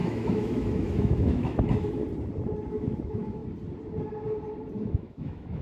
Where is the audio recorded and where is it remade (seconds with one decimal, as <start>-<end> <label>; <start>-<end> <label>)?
0.0-2.0 remade; 2.0-2.7 recorded; 2.7-3.4 remade; 3.4-4.9 recorded; 4.9-5.6 remade